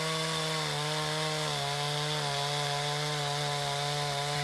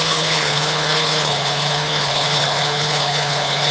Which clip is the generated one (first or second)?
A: second